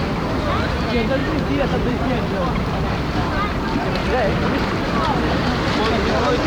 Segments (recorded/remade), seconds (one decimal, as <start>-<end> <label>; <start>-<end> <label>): 0.0-1.2 recorded; 1.2-2.8 remade; 2.8-6.5 recorded